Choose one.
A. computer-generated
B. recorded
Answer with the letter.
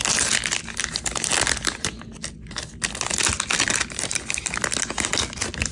B